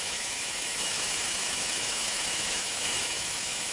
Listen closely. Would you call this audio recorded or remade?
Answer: remade